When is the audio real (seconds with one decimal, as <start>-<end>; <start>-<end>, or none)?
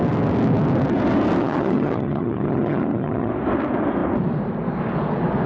0.0-1.4; 3.3-5.5